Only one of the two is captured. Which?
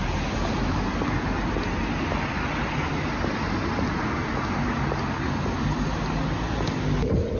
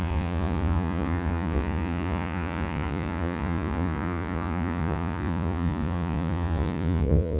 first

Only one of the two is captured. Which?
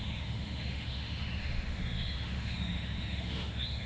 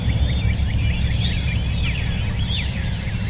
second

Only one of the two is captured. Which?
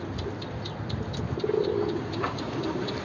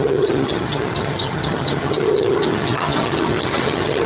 first